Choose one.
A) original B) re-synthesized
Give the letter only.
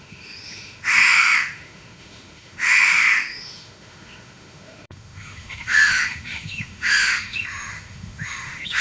B